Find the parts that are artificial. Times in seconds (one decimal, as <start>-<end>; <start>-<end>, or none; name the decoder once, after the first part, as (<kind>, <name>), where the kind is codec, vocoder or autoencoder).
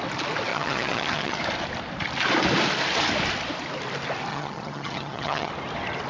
0.5-1.4 (vocoder, HiFi-GAN); 4.3-5.5